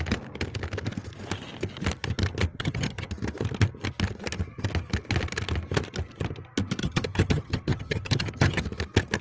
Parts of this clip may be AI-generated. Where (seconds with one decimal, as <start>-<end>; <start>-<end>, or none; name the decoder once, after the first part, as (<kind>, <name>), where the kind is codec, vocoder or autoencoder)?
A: 2.5-3.1 (vocoder, HiFi-GAN); 6.8-8.6